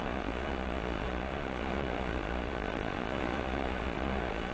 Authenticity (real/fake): fake